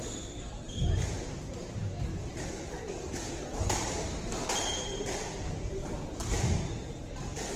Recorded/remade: remade